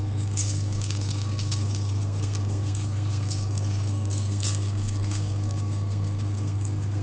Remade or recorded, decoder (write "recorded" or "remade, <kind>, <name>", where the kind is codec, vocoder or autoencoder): remade, codec, SNAC